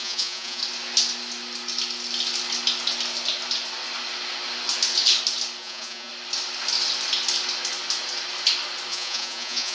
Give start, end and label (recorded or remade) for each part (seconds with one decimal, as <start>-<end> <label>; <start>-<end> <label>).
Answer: 0.0-0.6 remade; 0.6-5.6 recorded; 5.6-6.1 remade; 6.1-8.9 recorded; 8.9-9.7 remade